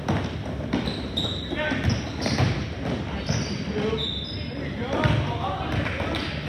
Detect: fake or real real